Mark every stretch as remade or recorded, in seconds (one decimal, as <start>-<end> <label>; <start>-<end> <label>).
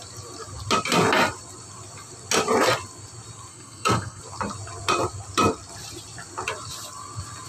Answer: 0.0-3.5 recorded; 3.5-4.2 remade; 4.2-7.5 recorded